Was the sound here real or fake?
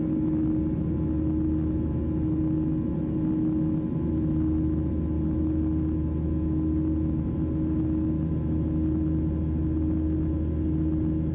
real